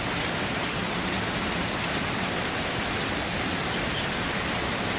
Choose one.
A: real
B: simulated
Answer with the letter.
A